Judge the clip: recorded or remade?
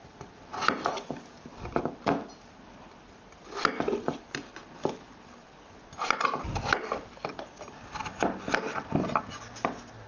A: recorded